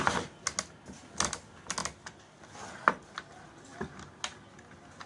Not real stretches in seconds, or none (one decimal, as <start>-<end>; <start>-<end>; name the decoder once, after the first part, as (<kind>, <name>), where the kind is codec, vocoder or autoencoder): none